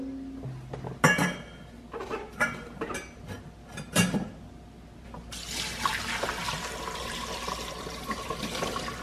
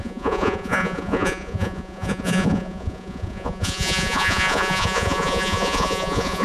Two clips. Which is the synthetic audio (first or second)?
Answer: second